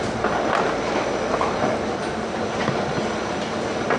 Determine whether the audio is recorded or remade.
recorded